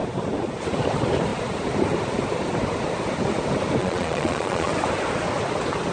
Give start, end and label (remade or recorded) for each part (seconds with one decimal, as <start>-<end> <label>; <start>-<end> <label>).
0.0-3.8 recorded; 3.8-4.7 remade; 4.7-5.9 recorded